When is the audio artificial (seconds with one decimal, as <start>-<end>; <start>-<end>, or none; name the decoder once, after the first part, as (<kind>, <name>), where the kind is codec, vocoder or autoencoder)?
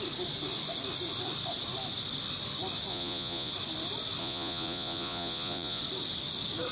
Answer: 2.9-3.5 (vocoder, Vocos); 4.2-5.8